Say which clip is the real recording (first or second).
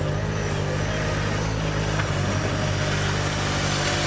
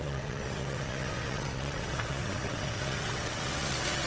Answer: first